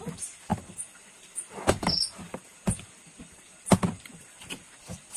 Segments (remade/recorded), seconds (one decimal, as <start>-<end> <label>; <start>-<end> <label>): 0.0-0.5 remade; 0.5-3.6 recorded; 3.6-5.2 remade